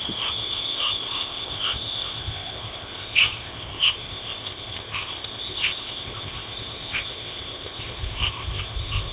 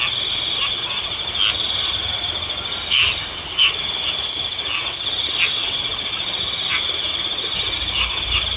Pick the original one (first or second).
second